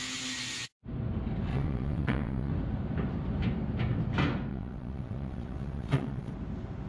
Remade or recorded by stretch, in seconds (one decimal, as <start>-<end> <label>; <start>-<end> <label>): 0.0-1.5 recorded; 1.5-2.5 remade; 2.5-4.5 recorded; 4.5-6.3 remade; 6.3-6.9 recorded